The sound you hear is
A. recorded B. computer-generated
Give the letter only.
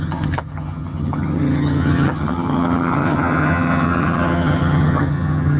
B